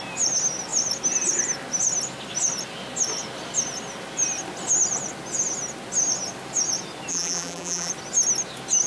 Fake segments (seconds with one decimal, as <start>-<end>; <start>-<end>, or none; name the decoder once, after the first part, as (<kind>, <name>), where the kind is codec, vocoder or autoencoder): 7.1-7.9 (vocoder, BigVGAN v2)